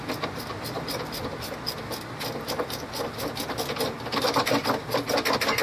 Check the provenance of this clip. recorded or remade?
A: recorded